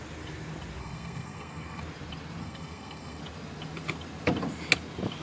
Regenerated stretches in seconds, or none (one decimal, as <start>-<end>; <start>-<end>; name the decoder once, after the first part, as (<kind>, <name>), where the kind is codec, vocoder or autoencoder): 0.8-1.8 (codec, SNAC); 2.4-3.2